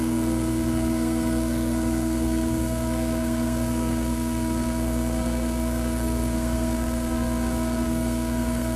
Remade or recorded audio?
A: remade